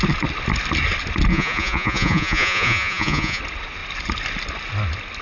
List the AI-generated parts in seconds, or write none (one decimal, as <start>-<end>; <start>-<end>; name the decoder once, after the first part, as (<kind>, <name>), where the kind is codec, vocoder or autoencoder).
1.3-3.4 (vocoder, Vocos)